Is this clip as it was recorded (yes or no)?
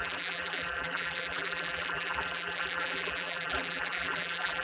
no